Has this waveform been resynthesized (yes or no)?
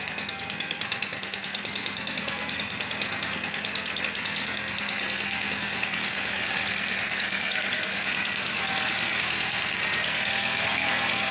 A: yes